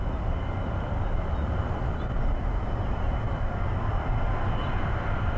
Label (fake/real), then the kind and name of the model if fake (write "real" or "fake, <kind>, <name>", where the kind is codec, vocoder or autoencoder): real